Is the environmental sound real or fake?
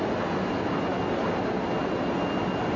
real